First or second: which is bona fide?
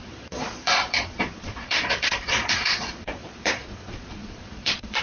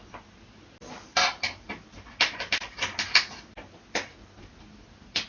second